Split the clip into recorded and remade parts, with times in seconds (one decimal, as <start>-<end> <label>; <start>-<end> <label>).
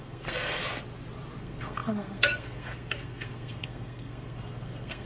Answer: 0.0-0.6 remade; 0.6-1.4 recorded; 1.4-5.1 remade